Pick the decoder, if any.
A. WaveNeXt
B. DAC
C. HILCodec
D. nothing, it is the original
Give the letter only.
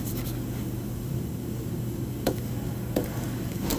B